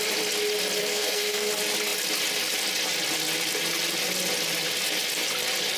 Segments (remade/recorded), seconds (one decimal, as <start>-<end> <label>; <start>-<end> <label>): 0.0-0.8 recorded; 0.8-1.5 remade; 1.5-5.8 recorded